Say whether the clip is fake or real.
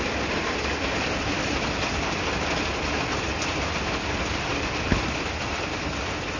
real